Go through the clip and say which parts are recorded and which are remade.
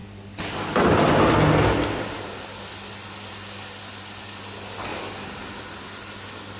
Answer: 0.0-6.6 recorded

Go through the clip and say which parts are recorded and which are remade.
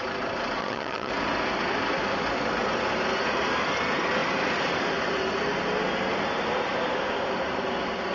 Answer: 0.0-0.6 recorded; 0.6-1.1 remade; 1.1-8.1 recorded